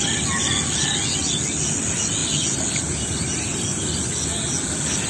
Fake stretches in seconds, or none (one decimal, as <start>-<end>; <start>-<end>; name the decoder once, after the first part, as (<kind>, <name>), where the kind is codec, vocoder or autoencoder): none